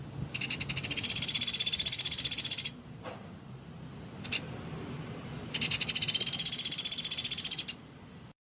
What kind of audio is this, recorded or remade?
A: recorded